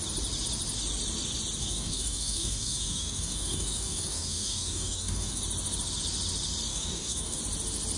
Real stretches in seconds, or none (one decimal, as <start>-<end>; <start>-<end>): 0.0-1.6; 5.4-6.7; 7.4-8.0